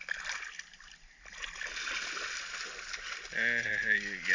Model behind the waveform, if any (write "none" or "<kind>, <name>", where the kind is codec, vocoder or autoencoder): none